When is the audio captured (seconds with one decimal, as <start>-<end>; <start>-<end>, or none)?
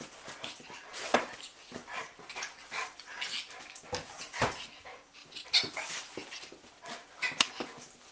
0.0-8.1